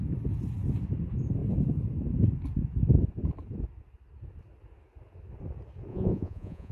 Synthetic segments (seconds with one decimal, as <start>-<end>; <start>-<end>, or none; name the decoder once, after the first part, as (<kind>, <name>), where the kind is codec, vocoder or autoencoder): 5.9-6.7 (vocoder, Vocos)